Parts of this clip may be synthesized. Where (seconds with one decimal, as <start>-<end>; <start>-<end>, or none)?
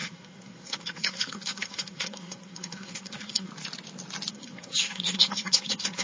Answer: 0.0-3.5; 4.3-6.0